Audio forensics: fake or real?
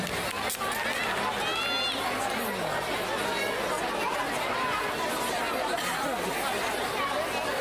real